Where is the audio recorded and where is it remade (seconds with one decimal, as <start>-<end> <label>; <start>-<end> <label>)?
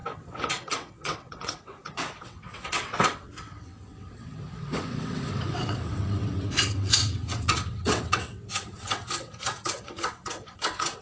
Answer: 0.0-11.0 remade